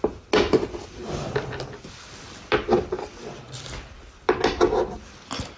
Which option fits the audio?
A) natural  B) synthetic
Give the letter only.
A